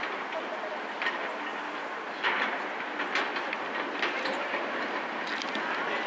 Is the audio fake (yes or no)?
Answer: no